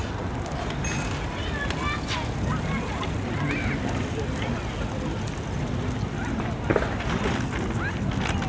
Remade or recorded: recorded